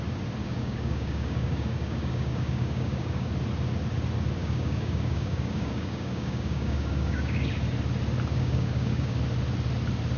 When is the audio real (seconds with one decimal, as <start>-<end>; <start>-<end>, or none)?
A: 0.0-0.4; 3.3-4.4; 7.5-8.3; 9.2-10.2